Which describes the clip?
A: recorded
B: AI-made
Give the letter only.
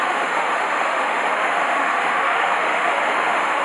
B